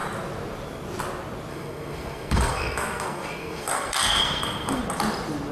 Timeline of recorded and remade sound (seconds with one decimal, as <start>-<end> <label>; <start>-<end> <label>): 0.0-1.5 recorded; 1.5-4.8 remade; 4.8-5.5 recorded